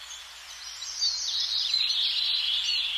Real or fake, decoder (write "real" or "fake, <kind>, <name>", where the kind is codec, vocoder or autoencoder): fake, vocoder, BigVGAN v2